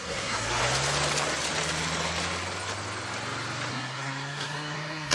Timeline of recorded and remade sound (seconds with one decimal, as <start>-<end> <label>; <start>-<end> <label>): 0.0-0.6 remade; 0.6-3.7 recorded; 3.7-5.1 remade